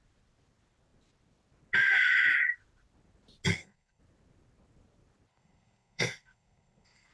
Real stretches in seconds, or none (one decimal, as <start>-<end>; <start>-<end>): 0.0-3.5; 4.0-5.3